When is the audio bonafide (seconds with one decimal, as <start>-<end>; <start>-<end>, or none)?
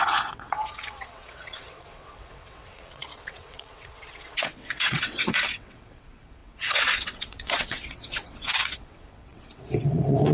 none